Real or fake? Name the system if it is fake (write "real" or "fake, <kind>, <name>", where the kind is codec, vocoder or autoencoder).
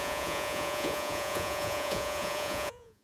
fake, vocoder, Vocos